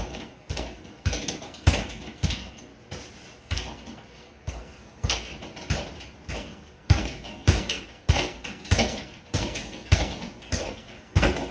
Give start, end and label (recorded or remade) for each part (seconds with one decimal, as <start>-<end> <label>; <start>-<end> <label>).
0.0-2.7 remade; 2.7-3.4 recorded; 3.4-5.3 remade; 5.3-6.3 recorded; 6.3-11.5 remade